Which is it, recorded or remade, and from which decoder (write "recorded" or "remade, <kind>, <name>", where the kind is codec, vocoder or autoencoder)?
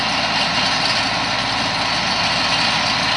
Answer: recorded